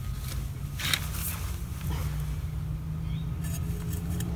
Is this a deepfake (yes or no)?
no